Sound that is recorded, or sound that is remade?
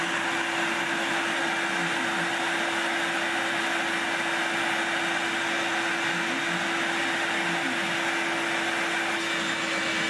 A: recorded